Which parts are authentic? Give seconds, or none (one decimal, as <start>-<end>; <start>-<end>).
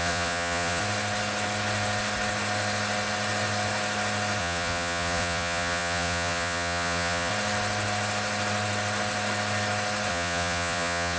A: 0.8-4.4; 7.3-10.1